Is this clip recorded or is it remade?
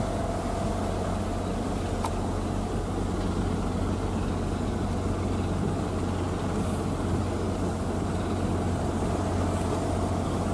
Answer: recorded